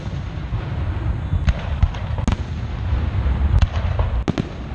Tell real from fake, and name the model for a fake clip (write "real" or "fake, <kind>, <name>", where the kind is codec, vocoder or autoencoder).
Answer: real